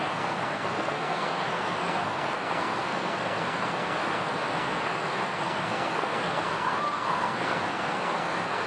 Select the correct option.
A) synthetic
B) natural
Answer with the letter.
A